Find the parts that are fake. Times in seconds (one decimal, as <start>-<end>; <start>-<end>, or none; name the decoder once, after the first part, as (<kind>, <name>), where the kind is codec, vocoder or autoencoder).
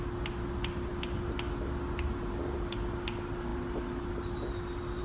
none